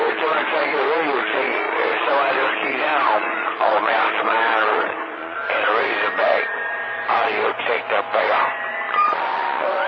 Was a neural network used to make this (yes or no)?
yes